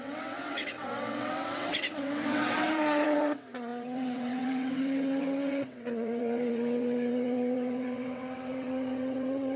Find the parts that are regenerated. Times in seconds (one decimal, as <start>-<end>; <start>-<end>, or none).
0.0-9.6